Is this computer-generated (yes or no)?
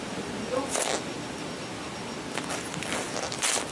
no